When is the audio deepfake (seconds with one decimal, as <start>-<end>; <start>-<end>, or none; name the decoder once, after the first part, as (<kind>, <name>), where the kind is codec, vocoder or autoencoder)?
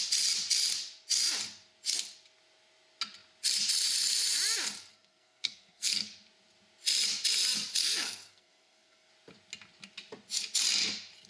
4.9-6.1 (codec, SNAC); 7.8-9.1